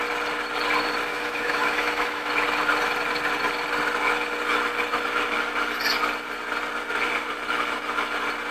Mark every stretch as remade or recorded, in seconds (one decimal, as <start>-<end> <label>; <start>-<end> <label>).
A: 0.0-1.1 recorded; 1.1-2.3 remade; 2.3-8.5 recorded